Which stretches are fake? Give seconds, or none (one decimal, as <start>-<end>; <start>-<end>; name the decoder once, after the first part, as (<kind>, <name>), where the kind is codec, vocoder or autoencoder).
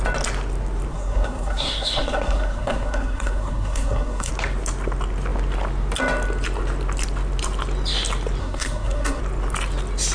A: 0.9-4.3 (codec, SNAC); 8.4-9.2